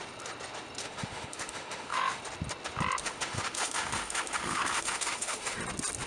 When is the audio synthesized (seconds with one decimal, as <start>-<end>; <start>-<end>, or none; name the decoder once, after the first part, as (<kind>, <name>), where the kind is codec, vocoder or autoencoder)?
0.8-2.2 (autoencoder, DAC-VAE); 3.0-5.6